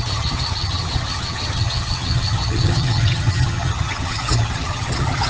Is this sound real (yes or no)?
no